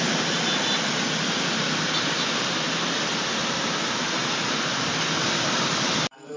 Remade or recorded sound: recorded